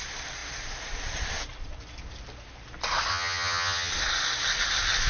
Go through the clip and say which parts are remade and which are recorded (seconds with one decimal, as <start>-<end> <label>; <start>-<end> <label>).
0.0-3.1 recorded; 3.1-3.9 remade; 3.9-5.1 recorded